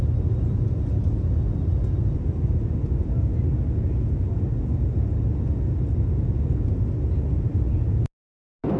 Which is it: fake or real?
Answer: real